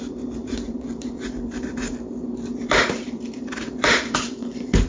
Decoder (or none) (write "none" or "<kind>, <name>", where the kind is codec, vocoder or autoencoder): vocoder, BigVGAN v2